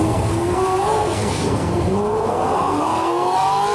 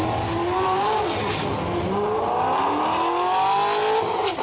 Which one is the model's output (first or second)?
first